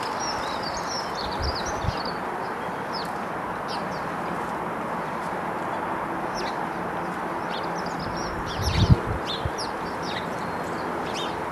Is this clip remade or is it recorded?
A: remade